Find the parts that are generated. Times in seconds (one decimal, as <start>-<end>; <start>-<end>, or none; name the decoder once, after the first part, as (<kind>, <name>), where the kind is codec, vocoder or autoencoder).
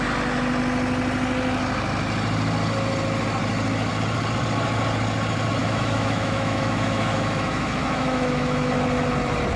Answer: 5.6-8.7 (autoencoder, DAC-VAE)